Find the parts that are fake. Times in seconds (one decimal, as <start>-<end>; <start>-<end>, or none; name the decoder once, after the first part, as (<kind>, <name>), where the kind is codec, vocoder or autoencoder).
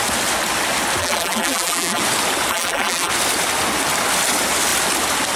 1.0-2.0 (vocoder, BigVGAN v2); 2.5-3.1